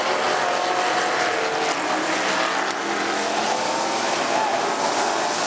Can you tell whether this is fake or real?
real